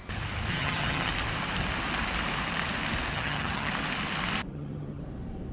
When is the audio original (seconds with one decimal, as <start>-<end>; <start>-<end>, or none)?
0.0-0.5; 1.1-3.1; 3.7-4.5; 5.0-5.5